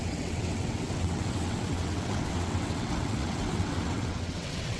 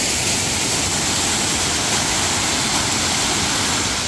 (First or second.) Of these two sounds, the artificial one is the first